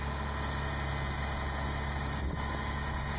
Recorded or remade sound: recorded